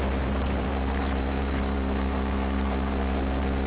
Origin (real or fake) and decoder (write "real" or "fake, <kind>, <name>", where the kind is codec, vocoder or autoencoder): fake, vocoder, BigVGAN v2